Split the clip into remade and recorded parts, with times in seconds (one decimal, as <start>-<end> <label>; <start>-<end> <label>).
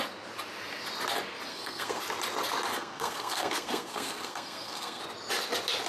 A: 0.0-1.5 recorded; 1.5-2.0 remade; 2.0-2.7 recorded; 2.7-5.0 remade; 5.0-5.9 recorded